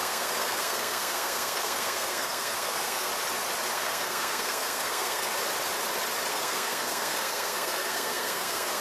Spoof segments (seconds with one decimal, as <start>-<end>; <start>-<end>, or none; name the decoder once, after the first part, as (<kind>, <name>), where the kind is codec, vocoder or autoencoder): 0.0-3.1 (codec, SNAC); 3.7-5.3; 6.3-8.8